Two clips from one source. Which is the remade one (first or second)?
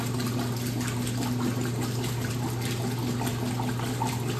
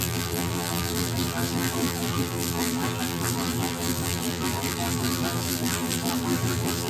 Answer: second